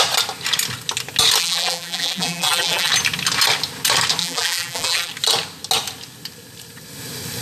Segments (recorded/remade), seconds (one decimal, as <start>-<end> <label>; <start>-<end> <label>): 0.0-1.4 recorded; 1.4-2.9 remade; 2.9-4.2 recorded; 4.2-5.1 remade; 5.1-7.4 recorded